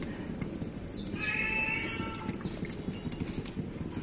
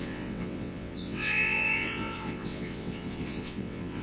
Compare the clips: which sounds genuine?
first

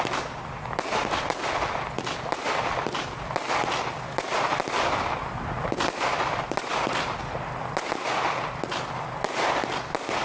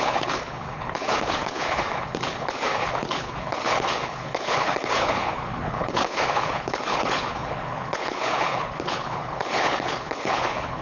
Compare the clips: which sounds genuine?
first